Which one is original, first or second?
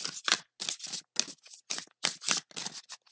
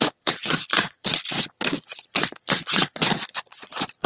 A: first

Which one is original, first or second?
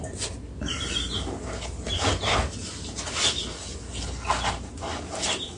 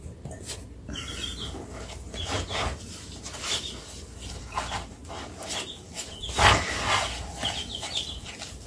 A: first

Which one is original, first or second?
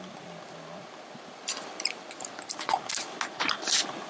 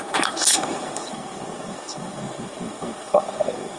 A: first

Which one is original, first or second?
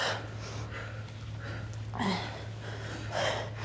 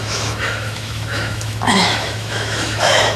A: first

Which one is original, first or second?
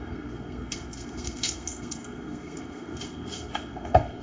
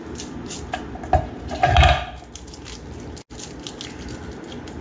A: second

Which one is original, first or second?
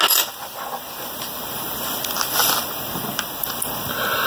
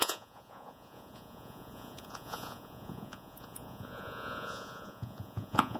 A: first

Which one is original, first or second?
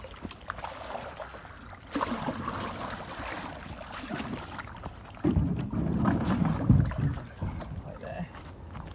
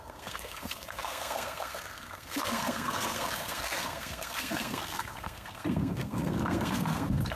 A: first